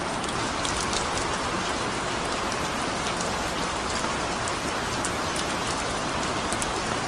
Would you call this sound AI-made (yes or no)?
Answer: no